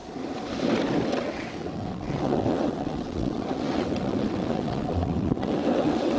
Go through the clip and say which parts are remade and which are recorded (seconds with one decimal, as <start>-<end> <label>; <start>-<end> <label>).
0.0-1.2 recorded; 1.2-6.2 remade